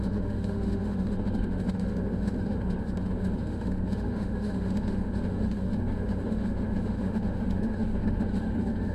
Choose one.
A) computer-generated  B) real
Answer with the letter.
A